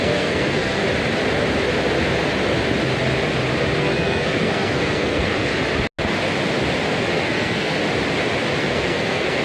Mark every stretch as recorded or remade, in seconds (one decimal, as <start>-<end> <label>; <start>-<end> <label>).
0.0-0.8 remade; 0.8-3.8 recorded; 3.8-5.5 remade; 5.5-7.1 recorded; 7.1-7.8 remade; 7.8-8.6 recorded; 8.6-9.4 remade